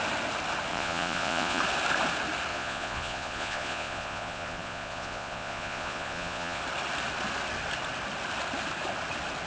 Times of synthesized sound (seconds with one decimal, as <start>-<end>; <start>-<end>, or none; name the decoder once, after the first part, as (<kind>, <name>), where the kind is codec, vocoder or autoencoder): 0.7-1.6 (vocoder, Vocos); 2.5-6.6